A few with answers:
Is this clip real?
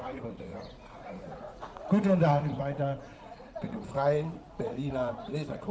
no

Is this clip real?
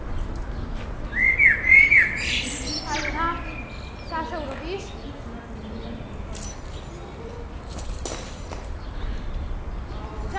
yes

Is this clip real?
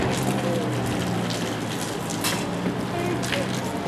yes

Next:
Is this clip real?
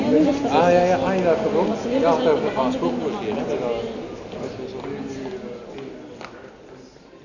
yes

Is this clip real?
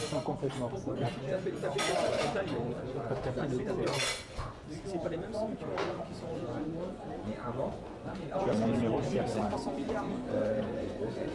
no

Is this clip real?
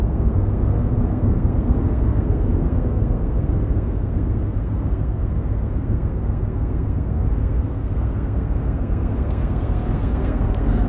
no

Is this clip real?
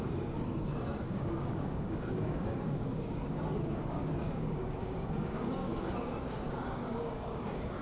no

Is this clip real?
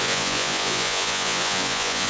no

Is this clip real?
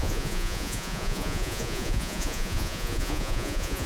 no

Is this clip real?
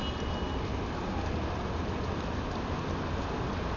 yes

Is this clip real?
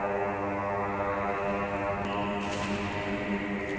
yes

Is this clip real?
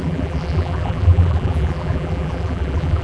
no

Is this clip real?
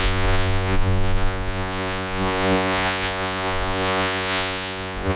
no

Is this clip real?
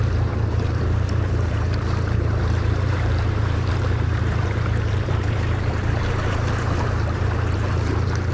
no